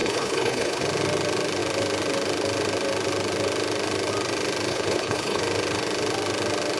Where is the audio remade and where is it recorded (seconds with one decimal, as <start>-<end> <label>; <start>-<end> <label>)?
0.0-0.8 remade; 0.8-4.7 recorded; 4.7-5.4 remade; 5.4-6.8 recorded